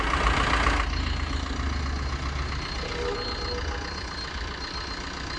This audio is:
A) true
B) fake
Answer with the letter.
A